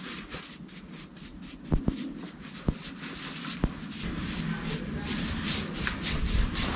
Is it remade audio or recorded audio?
recorded